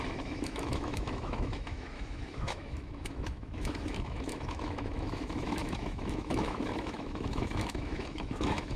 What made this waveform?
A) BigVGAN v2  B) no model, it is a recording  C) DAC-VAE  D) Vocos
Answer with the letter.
C